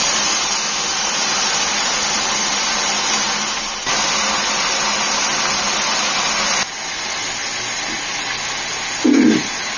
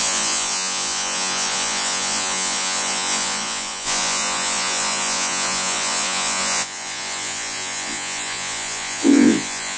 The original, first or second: first